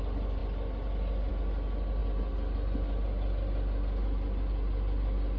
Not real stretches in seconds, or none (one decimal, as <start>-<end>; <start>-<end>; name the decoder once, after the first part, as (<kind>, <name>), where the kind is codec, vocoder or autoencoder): none